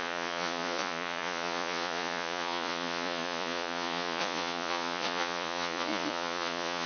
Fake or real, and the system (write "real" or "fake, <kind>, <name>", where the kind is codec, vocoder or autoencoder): fake, vocoder, Vocos